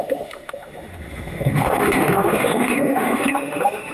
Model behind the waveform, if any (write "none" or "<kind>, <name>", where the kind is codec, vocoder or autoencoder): autoencoder, DAC-VAE